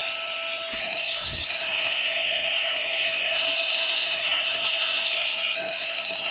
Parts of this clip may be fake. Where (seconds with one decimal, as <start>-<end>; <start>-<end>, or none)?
0.8-6.3